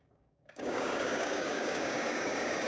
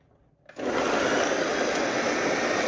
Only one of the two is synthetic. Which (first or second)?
first